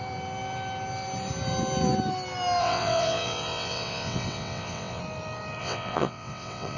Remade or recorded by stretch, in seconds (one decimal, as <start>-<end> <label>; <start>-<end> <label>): 0.0-2.6 recorded; 2.6-5.0 remade; 5.0-5.6 recorded; 5.6-6.8 remade